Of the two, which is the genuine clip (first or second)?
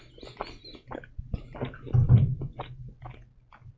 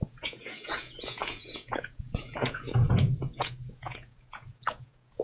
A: first